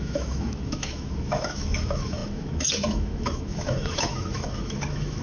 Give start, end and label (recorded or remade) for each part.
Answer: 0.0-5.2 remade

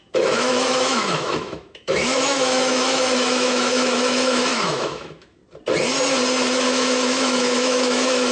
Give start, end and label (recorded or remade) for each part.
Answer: 0.0-5.4 remade; 5.4-6.5 recorded; 6.5-8.3 remade

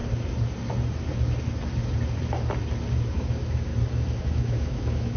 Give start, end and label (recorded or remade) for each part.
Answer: 0.0-3.1 recorded; 3.1-3.7 remade; 3.7-4.2 recorded; 4.2-5.2 remade

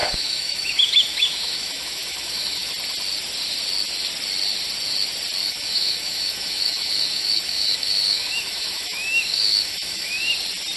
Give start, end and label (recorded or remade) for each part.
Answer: 0.0-2.7 remade; 2.7-5.4 recorded; 5.4-10.3 remade; 10.3-10.8 recorded